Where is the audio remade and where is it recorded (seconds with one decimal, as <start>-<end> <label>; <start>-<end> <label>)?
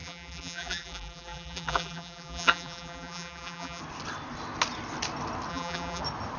0.0-3.8 remade; 3.8-5.5 recorded; 5.5-6.0 remade; 6.0-6.4 recorded